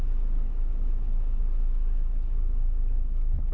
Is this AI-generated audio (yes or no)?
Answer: no